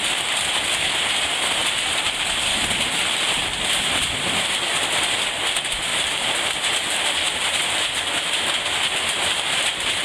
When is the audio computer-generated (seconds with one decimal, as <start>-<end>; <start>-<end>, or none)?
5.9-8.0